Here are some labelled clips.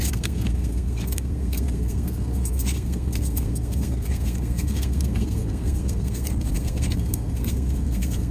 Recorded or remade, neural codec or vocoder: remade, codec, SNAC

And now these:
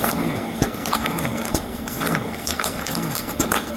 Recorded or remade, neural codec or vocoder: remade, codec, SNAC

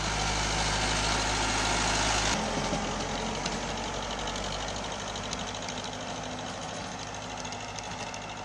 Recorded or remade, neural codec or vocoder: recorded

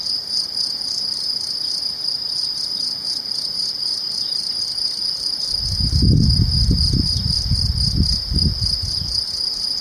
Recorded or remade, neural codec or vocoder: recorded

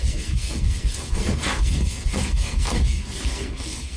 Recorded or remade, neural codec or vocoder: remade, codec, SNAC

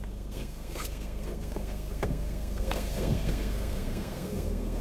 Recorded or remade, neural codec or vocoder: remade, codec, SNAC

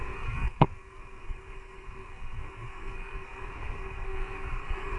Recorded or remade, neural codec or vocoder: remade, codec, SNAC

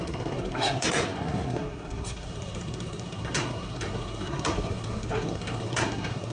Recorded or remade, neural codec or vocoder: remade, codec, SNAC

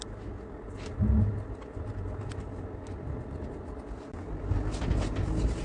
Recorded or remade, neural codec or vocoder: recorded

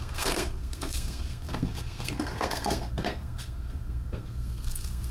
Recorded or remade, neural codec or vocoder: remade, codec, SNAC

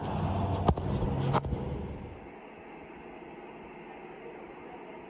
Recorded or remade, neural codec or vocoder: recorded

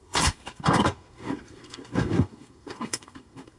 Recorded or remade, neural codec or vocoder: remade, codec, SNAC